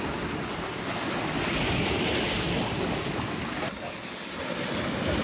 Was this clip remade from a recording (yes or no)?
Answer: no